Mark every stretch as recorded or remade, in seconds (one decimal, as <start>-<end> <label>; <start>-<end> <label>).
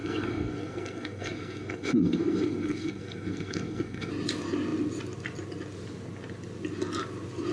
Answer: 0.0-4.1 remade; 4.1-7.5 recorded